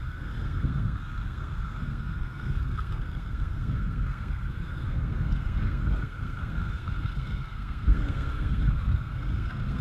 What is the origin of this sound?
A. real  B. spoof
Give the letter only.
B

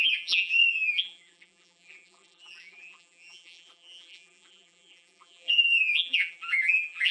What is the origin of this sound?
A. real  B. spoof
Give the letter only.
B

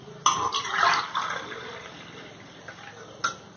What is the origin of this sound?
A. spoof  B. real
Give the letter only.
B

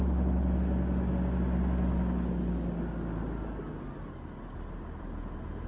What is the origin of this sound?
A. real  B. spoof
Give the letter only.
A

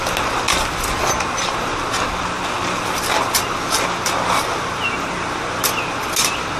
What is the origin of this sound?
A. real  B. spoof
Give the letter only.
A